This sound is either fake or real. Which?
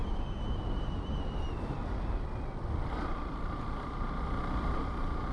real